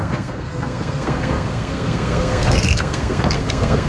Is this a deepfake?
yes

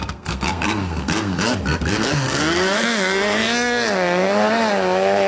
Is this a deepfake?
yes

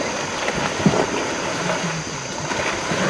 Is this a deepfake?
no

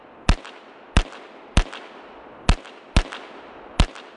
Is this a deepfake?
no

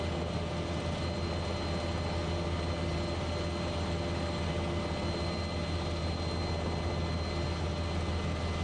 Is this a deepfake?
no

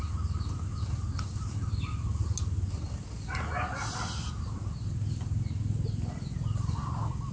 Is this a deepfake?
no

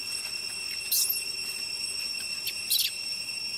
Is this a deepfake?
no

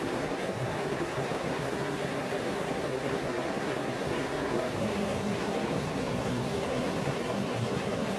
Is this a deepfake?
yes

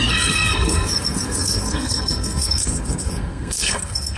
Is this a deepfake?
yes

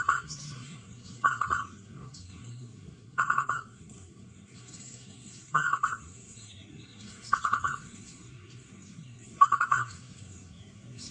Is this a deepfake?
yes